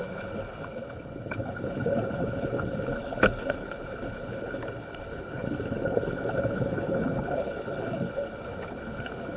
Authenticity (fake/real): fake